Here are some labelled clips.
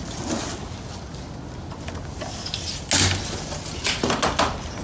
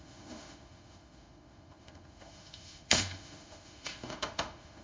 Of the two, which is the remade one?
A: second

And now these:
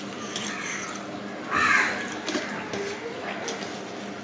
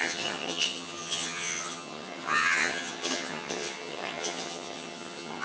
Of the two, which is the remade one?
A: second